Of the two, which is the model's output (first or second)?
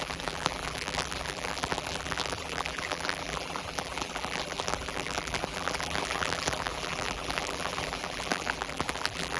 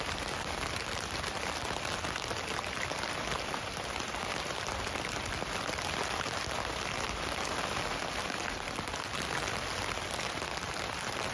first